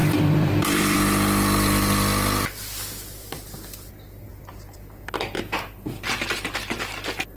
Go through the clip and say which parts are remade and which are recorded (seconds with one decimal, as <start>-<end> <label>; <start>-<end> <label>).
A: 0.0-3.9 remade; 3.9-4.3 recorded; 4.3-5.4 remade; 5.4-7.4 recorded